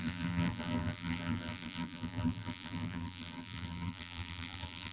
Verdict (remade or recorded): remade